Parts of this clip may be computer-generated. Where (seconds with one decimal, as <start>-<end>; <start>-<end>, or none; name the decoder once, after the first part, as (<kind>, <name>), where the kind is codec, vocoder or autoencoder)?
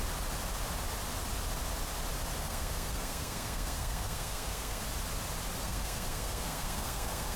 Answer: 2.4-4.8 (codec, SNAC); 5.6-7.4